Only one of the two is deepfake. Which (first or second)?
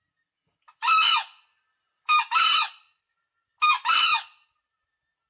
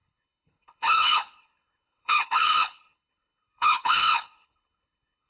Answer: second